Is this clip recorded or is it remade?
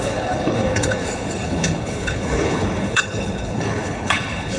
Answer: remade